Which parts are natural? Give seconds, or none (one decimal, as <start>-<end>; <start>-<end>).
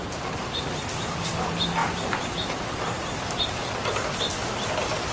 1.3-1.8; 3.5-5.1